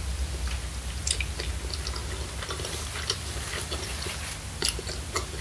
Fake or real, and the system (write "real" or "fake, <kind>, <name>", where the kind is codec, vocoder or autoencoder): real